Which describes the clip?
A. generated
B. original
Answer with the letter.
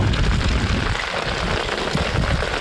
B